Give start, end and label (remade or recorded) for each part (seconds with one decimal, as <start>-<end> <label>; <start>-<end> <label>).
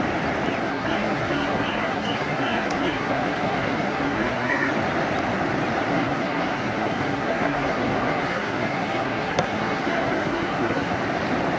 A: 0.0-0.6 recorded; 0.6-4.7 remade; 4.7-5.9 recorded; 5.9-11.0 remade; 11.0-11.6 recorded